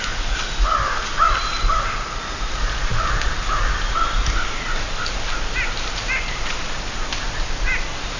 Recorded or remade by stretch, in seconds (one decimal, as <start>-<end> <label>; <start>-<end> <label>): 0.0-8.2 recorded